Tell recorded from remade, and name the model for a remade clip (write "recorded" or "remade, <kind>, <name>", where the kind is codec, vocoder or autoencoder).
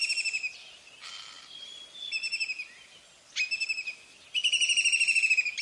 recorded